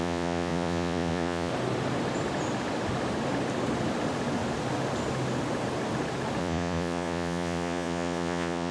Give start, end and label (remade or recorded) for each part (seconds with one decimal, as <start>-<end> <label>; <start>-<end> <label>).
0.0-1.5 remade; 1.5-6.4 recorded; 6.4-8.7 remade